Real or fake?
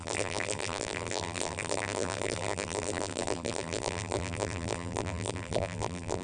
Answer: fake